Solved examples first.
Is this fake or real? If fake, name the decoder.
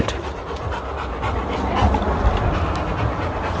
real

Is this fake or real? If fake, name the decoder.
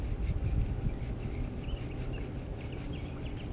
real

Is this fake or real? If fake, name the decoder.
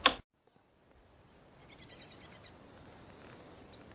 real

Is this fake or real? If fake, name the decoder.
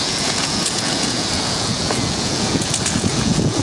fake, vocoder, Vocos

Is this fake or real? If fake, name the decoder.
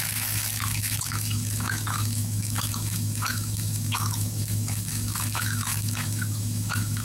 fake, autoencoder, DAC-VAE